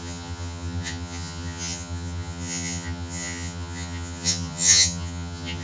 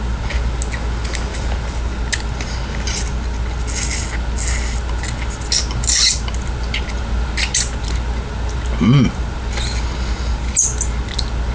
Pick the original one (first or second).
second